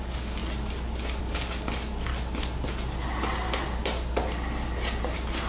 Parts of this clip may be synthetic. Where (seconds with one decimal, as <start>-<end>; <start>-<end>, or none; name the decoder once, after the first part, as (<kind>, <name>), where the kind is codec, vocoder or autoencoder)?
0.0-0.4 (codec, DAC); 1.2-2.1